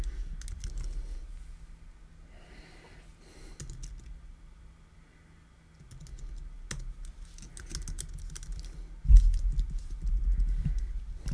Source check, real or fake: real